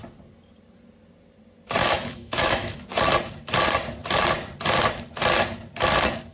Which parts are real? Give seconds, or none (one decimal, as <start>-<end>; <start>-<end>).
0.0-1.8; 2.9-6.3